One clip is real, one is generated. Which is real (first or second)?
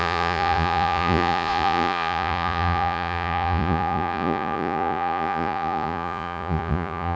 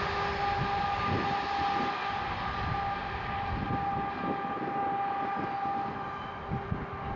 second